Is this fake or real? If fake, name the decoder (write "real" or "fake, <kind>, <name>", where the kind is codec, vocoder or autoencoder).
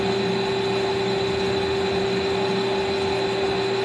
real